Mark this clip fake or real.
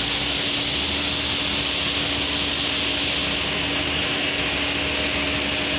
real